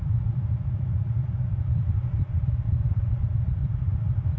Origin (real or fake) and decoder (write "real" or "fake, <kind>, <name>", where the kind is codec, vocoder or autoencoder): fake, vocoder, BigVGAN v2